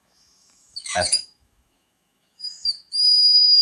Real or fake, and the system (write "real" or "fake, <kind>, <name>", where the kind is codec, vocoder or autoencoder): fake, autoencoder, DAC-VAE